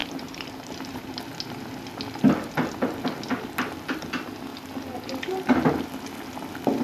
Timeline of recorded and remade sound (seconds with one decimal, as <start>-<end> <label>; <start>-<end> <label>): 0.0-1.2 remade; 1.2-6.8 recorded